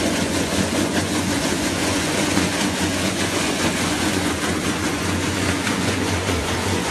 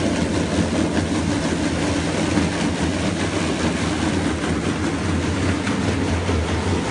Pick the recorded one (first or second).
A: second